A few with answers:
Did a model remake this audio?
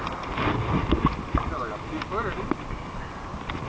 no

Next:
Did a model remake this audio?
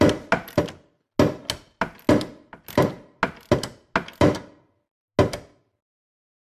no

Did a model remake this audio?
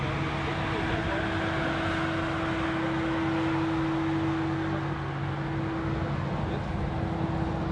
no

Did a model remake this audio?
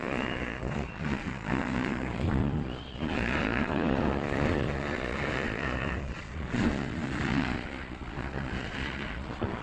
yes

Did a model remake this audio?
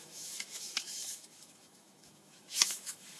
yes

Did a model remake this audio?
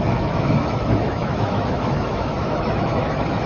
yes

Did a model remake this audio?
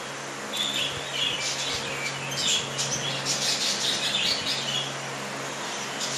no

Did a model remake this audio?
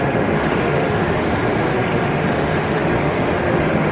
yes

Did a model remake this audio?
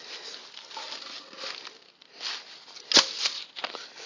no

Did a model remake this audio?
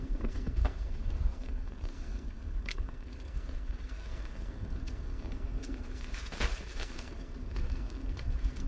yes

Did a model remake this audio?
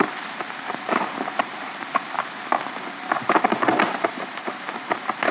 yes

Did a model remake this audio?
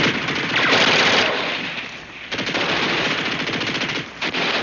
yes